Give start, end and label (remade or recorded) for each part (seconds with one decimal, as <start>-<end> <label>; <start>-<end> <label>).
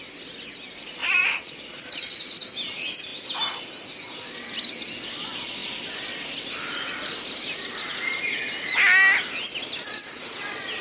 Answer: 0.0-1.0 recorded; 1.0-2.1 remade; 2.1-10.8 recorded